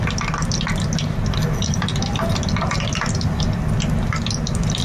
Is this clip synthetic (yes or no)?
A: no